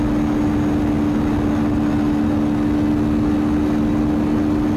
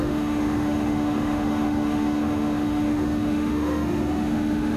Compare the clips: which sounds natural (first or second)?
first